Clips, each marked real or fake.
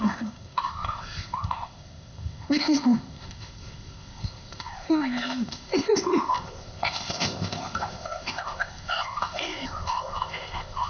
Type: fake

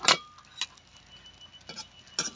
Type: real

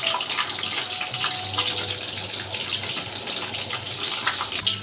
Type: real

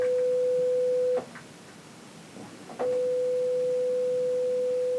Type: real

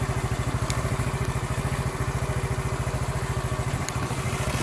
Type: real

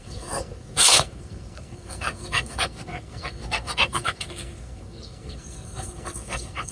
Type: fake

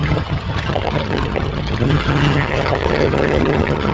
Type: fake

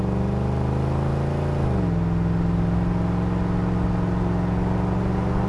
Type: real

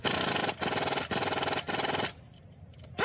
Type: real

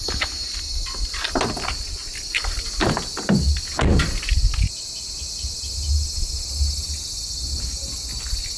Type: real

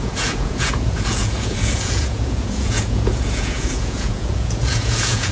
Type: fake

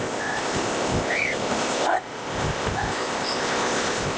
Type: fake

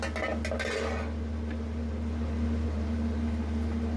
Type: real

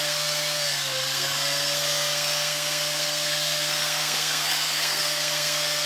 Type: fake